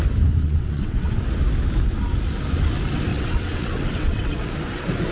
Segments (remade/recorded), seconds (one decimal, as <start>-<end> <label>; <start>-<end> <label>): 0.0-0.4 recorded; 0.4-1.2 remade; 1.2-3.1 recorded; 3.1-4.5 remade; 4.5-5.1 recorded